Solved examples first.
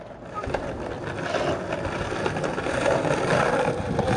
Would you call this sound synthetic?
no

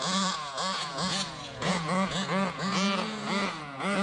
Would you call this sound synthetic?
yes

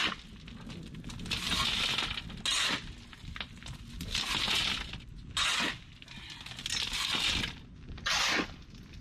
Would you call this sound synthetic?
no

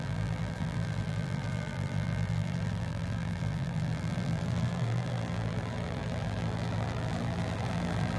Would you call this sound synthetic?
yes